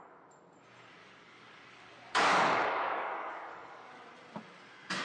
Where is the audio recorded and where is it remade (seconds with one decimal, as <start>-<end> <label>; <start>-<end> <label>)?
0.0-1.0 recorded; 1.0-4.0 remade; 4.0-5.0 recorded